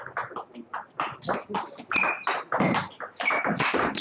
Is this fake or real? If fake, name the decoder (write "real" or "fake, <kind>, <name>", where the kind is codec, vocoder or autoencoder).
real